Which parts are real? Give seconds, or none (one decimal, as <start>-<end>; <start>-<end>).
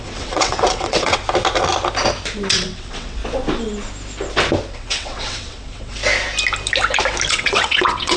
1.2-2.5; 3.2-4.7; 6.0-7.3